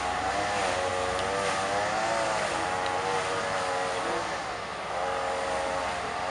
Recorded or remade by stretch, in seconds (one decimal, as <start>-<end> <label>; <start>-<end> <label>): 0.0-6.3 recorded